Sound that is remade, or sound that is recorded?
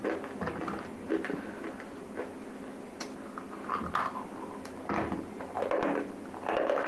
recorded